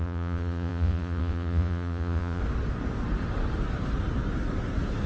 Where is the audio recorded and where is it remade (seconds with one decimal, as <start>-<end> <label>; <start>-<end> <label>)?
0.0-2.4 remade; 2.4-5.1 recorded